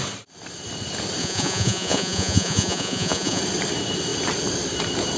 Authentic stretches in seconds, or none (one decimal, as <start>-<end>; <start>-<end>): 0.0-1.2; 3.4-5.2